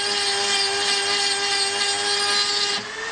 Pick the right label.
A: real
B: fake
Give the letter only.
A